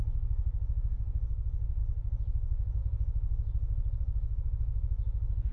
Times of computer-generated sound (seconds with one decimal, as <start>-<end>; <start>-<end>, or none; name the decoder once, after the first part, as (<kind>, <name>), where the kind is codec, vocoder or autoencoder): none